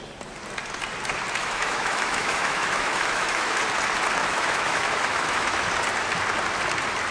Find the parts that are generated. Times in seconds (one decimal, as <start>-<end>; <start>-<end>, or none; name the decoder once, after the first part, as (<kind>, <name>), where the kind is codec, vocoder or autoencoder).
1.4-3.6 (autoencoder, DAC-VAE); 4.2-5.7